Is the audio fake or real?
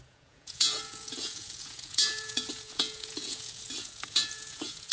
fake